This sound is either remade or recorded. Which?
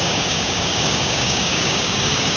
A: remade